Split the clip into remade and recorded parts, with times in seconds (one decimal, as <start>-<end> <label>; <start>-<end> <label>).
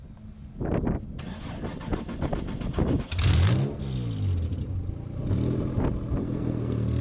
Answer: 0.0-6.2 recorded; 6.2-7.0 remade